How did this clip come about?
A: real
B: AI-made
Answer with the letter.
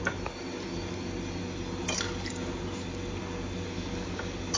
A